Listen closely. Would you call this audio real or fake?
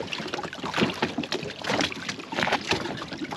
fake